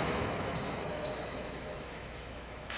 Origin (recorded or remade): remade